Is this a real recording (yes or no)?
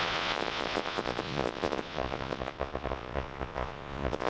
no